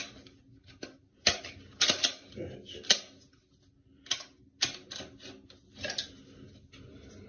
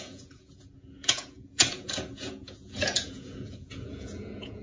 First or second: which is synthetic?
second